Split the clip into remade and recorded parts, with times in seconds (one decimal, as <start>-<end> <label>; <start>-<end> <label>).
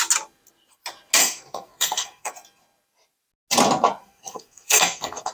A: 0.0-1.2 recorded; 1.2-2.3 remade; 2.3-4.0 recorded; 4.0-5.3 remade